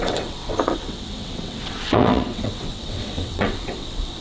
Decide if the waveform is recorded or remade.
remade